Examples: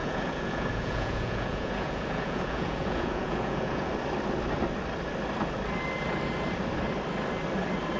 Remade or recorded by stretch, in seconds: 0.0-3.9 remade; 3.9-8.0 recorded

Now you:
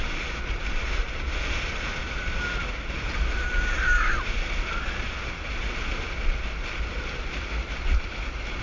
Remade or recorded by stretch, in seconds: 0.0-8.6 recorded